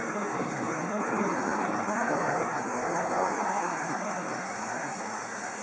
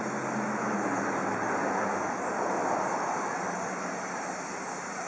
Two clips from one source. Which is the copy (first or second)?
first